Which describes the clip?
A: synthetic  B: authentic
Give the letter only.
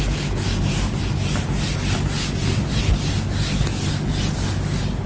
B